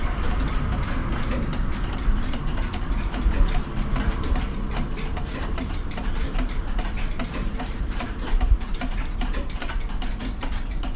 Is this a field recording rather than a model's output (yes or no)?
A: no